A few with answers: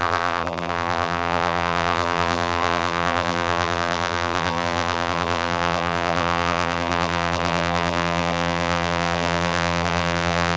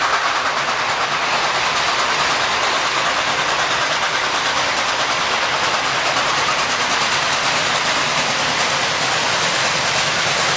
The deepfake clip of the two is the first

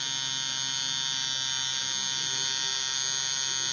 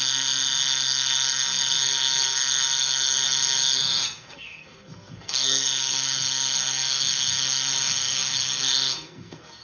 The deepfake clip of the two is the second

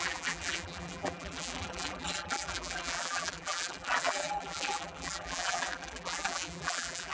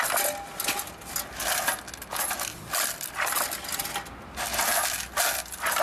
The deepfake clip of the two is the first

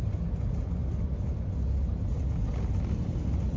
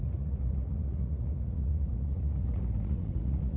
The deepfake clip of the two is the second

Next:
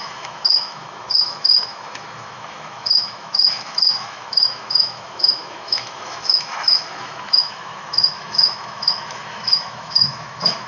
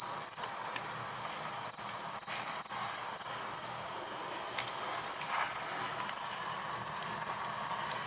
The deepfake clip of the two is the first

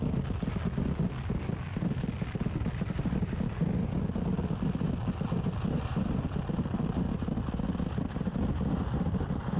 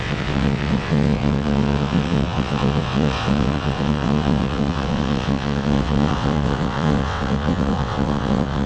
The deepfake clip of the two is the second